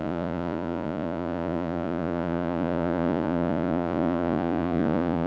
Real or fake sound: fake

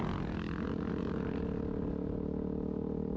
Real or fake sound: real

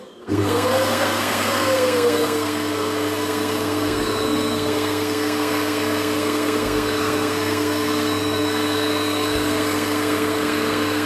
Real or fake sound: fake